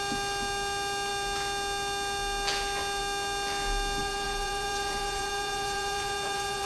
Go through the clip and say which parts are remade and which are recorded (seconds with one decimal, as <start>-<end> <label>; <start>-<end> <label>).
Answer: 0.0-4.0 recorded; 4.0-6.7 remade